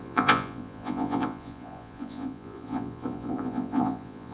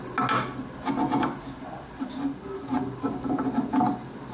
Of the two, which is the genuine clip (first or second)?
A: second